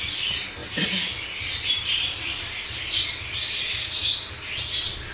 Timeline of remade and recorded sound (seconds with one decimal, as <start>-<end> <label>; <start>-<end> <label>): 0.0-0.6 recorded; 0.6-3.0 remade; 3.0-5.1 recorded